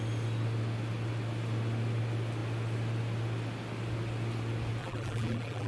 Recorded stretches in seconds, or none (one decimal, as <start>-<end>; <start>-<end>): 0.0-4.8